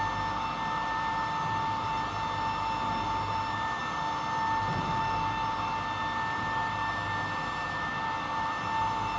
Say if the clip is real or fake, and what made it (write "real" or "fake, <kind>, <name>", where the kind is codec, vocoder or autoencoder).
real